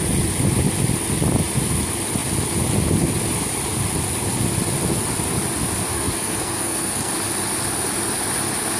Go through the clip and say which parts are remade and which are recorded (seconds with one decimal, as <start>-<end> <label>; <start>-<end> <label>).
0.0-5.9 recorded; 5.9-7.1 remade; 7.1-8.8 recorded